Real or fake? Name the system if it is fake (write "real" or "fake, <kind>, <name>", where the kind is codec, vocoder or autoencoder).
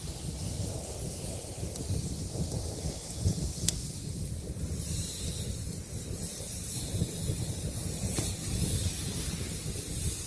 real